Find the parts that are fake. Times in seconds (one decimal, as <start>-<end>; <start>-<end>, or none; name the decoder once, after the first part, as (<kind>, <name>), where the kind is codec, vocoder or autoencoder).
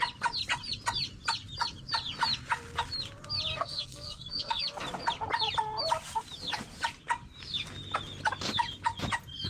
3.5-4.6 (codec, SNAC)